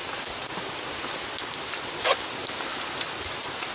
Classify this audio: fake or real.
real